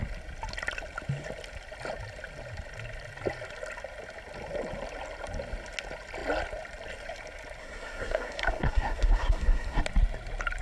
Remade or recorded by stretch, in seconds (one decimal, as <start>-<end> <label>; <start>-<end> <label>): 0.0-7.6 recorded; 7.6-9.8 remade; 9.8-10.6 recorded